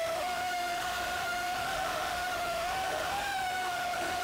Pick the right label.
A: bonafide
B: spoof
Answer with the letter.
B